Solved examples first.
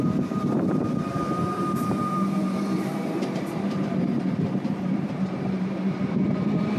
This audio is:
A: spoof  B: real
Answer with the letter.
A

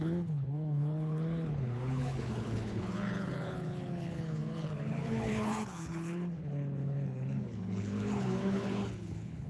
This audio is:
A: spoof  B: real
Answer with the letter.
A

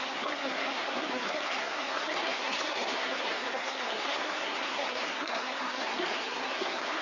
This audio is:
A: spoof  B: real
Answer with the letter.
A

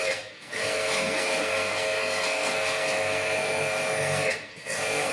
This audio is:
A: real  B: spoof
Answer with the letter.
B